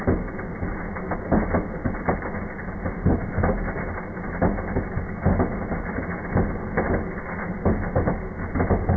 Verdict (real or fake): real